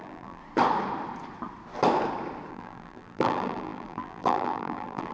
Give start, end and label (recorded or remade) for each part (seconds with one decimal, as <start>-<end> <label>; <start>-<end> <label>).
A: 0.0-0.4 remade; 0.4-2.5 recorded; 2.5-5.1 remade

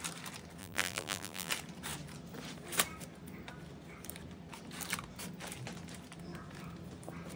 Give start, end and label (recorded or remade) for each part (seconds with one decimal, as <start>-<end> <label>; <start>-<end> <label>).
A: 0.0-0.6 recorded; 0.6-1.5 remade; 1.5-7.4 recorded